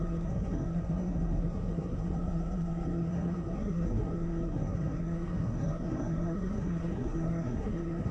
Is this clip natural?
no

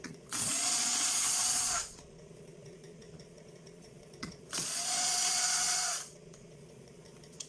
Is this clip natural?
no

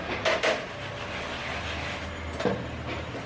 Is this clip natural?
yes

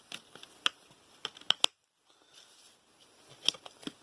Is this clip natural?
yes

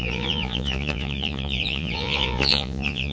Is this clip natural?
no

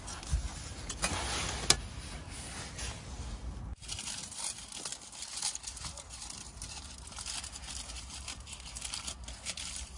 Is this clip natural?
yes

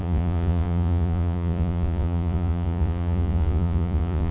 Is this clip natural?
no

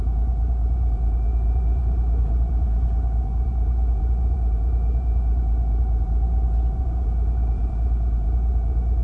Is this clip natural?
no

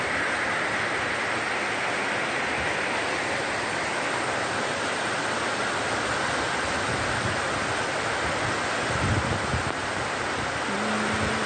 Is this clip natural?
yes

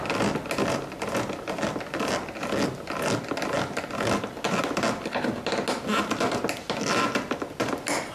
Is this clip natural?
yes